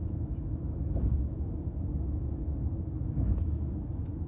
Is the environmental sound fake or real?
fake